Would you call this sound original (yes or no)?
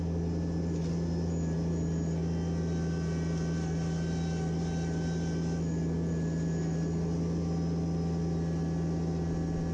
yes